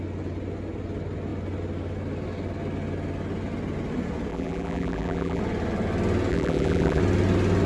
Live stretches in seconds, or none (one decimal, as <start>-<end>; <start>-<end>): 0.0-4.3; 5.4-6.3; 7.0-7.7